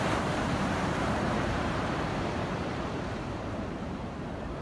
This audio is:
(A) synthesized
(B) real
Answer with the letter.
A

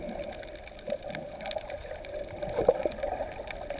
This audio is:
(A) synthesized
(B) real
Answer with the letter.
B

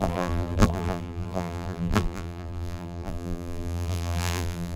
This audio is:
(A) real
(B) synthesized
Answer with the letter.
B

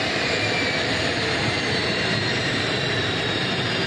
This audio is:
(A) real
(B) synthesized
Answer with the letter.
B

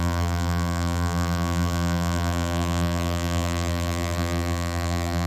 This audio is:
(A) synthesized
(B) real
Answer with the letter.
A